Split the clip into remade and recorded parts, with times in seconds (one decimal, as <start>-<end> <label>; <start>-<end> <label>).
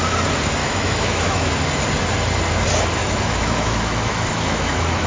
0.0-0.6 recorded; 0.6-1.5 remade; 1.5-3.0 recorded; 3.0-5.1 remade